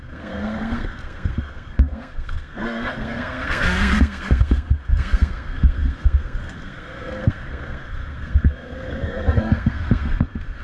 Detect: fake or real fake